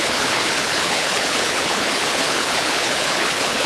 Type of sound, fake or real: fake